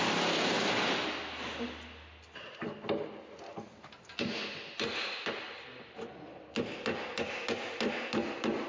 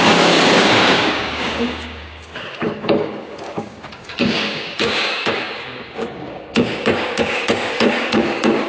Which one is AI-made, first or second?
second